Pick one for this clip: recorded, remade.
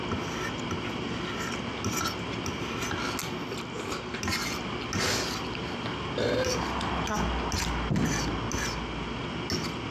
recorded